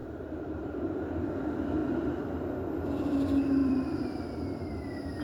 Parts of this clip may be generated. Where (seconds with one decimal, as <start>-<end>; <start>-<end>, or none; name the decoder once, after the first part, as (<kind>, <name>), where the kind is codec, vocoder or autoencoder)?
0.0-1.3 (vocoder, BigVGAN v2); 3.6-4.7